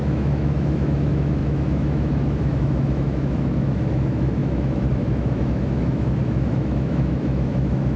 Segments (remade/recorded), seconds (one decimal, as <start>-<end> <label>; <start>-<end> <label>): 0.0-8.0 remade